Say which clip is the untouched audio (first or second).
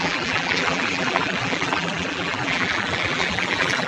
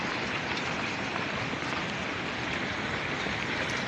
second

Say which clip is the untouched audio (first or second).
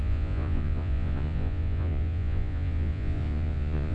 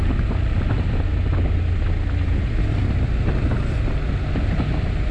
second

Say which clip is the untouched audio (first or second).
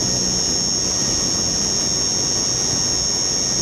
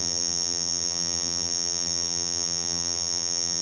first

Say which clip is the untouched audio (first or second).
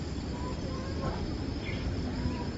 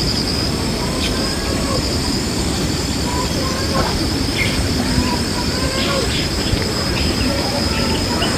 first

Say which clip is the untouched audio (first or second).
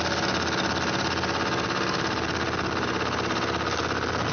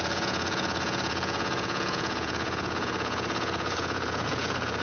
first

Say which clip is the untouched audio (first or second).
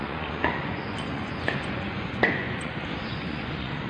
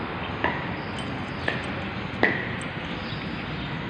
second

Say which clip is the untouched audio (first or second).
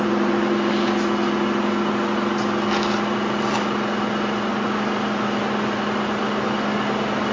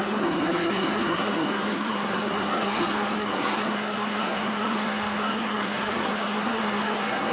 first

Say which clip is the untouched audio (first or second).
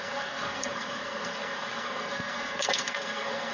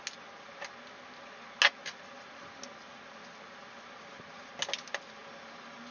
second